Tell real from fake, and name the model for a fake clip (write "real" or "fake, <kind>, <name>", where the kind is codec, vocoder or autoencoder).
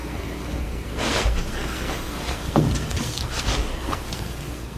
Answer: fake, codec, SNAC